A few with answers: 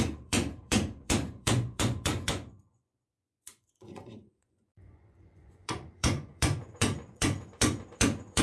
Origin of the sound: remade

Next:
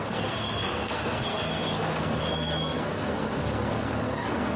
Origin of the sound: remade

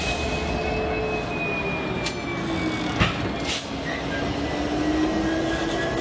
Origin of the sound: recorded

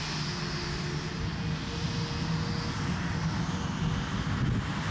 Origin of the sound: recorded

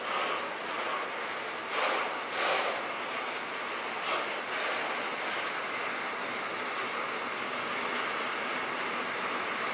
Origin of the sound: recorded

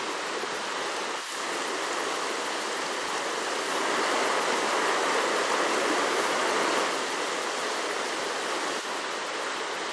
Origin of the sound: recorded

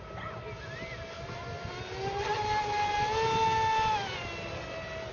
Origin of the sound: recorded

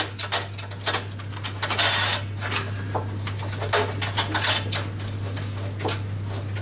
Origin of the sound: recorded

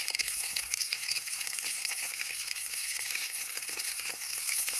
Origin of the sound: remade